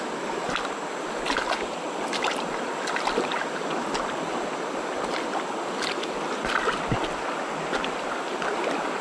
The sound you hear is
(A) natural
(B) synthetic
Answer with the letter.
A